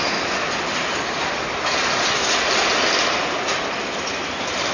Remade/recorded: recorded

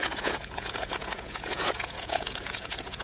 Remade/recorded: remade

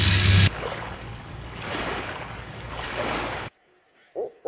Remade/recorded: remade